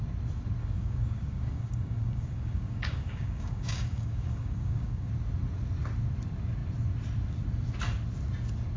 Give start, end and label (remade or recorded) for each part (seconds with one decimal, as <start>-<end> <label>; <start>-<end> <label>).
0.0-0.6 recorded; 0.6-5.1 remade; 5.1-8.8 recorded